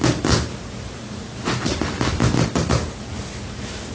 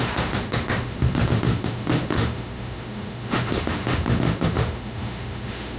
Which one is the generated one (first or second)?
second